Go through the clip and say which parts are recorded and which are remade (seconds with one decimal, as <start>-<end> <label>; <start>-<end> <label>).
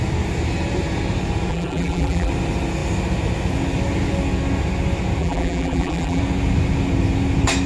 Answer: 0.0-1.5 recorded; 1.5-2.3 remade; 2.3-5.2 recorded; 5.2-6.2 remade; 6.2-7.7 recorded